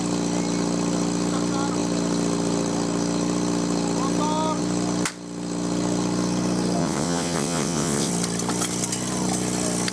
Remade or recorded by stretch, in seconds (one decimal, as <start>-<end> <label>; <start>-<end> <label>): 0.0-6.8 recorded; 6.8-8.1 remade; 8.1-9.9 recorded